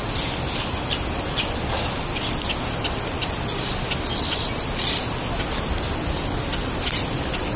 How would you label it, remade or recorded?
recorded